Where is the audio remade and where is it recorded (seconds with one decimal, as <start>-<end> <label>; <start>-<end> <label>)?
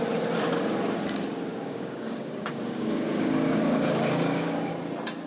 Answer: 0.0-1.5 recorded; 1.5-4.7 remade; 4.7-5.3 recorded